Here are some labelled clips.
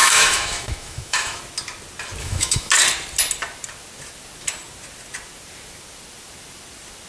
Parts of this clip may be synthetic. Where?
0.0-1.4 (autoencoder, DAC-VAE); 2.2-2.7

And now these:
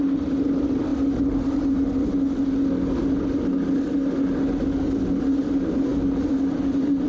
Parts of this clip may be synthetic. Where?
none